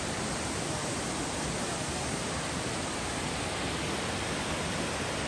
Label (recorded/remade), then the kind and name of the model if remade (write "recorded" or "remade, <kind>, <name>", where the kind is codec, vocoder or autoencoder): recorded